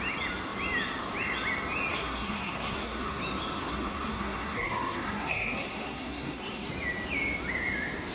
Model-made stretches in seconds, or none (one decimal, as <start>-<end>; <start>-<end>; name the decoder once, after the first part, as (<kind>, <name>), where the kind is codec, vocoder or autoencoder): 1.9-3.2 (codec, SNAC); 3.6-6.7